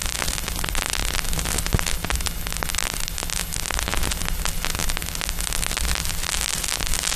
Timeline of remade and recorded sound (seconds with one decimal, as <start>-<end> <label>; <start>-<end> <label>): 0.0-7.2 recorded